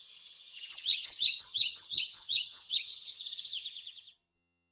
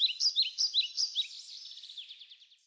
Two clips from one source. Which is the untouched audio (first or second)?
second